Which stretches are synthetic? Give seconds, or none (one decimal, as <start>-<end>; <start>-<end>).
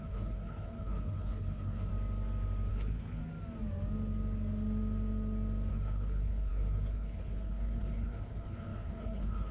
0.0-1.9; 2.7-3.2; 5.7-9.5